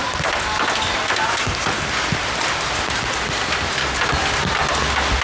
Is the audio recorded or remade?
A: recorded